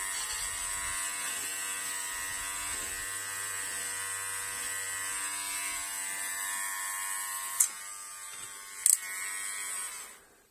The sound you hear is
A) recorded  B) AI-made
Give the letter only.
A